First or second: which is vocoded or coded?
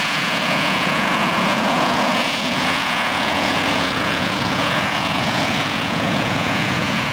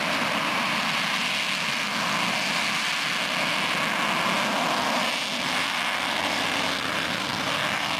first